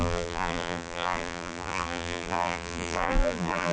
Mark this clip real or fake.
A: fake